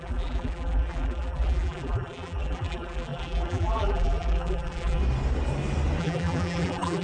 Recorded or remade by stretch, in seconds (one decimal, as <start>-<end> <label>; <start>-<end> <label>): 0.0-5.0 remade; 5.0-6.0 recorded; 6.0-7.0 remade